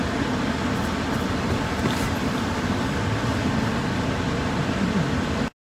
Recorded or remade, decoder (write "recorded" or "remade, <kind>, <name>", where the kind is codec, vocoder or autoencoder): recorded